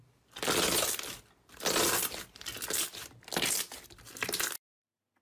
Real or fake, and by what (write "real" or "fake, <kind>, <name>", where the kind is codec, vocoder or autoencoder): real